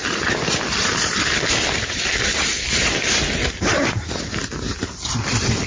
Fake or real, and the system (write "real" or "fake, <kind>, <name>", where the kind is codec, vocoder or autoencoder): real